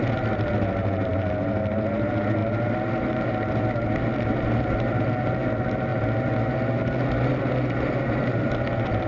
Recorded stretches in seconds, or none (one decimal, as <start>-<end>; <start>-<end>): 0.0-9.1